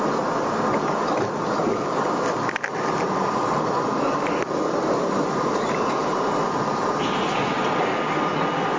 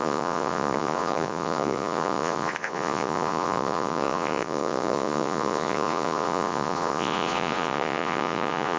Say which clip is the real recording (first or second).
first